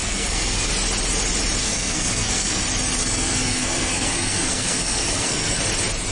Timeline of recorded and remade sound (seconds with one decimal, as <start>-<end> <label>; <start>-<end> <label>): 0.0-0.7 remade; 0.7-1.6 recorded; 1.6-2.6 remade; 2.6-3.0 recorded; 3.0-5.6 remade; 5.6-6.1 recorded